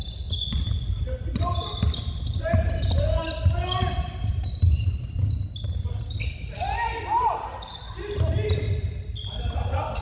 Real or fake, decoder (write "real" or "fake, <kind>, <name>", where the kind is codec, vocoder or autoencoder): real